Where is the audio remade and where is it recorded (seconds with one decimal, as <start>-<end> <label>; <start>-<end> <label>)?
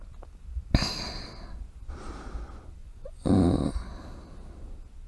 0.0-2.8 recorded; 2.8-3.7 remade; 3.7-5.1 recorded